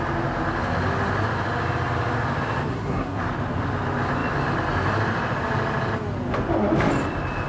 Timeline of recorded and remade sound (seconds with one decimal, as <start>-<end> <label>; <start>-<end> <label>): 0.0-2.7 recorded; 2.7-3.2 remade; 3.2-7.5 recorded